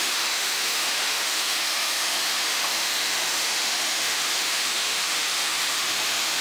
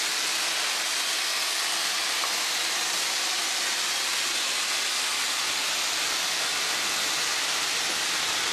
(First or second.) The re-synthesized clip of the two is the first